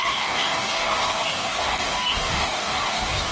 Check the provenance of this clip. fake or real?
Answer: fake